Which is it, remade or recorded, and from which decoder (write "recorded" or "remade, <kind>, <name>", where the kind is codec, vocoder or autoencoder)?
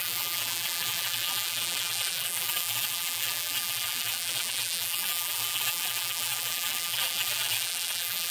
remade, vocoder, BigVGAN v2